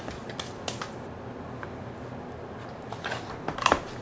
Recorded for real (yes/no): yes